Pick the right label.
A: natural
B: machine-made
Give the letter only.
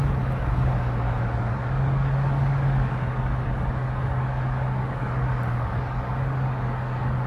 B